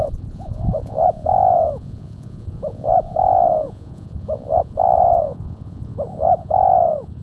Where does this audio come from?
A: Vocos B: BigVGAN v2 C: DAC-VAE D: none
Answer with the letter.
A